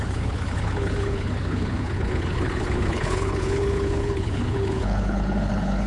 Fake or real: fake